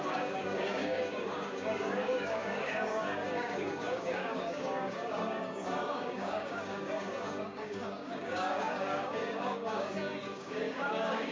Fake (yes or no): yes